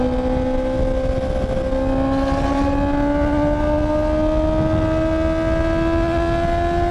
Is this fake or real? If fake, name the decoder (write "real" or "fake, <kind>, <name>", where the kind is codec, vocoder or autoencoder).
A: real